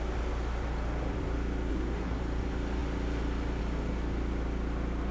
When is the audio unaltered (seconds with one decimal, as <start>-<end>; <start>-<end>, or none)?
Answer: 0.0-1.7; 2.2-5.1